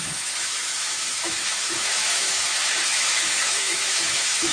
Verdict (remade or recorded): remade